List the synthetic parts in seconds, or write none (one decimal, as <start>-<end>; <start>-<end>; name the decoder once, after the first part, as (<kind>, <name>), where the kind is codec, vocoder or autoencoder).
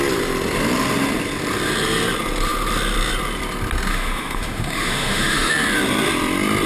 3.9-5.5 (autoencoder, DAC-VAE)